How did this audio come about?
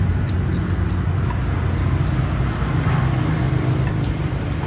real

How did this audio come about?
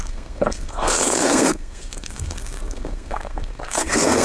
fake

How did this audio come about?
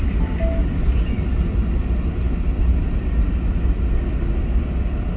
real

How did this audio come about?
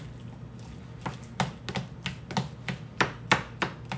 real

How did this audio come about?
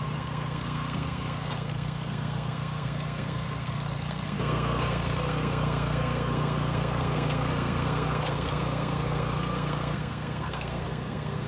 fake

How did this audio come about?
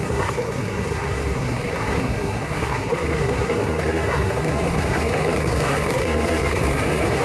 fake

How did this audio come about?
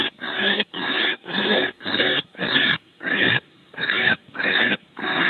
fake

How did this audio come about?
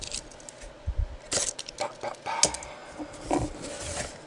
real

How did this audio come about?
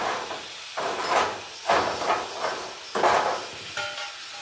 real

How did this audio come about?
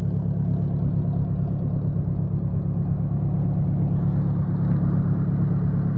real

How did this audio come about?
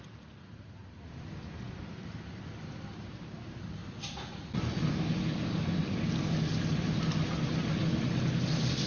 real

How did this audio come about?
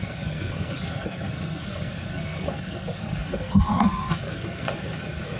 fake